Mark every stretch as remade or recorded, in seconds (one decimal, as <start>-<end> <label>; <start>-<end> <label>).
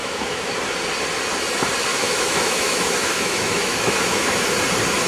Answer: 0.0-0.5 remade; 0.5-1.9 recorded; 1.9-4.4 remade; 4.4-5.1 recorded